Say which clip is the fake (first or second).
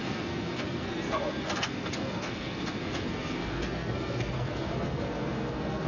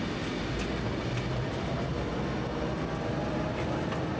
first